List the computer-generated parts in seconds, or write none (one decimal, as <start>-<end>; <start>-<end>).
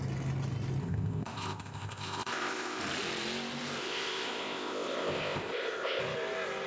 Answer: 0.8-2.8; 3.8-6.0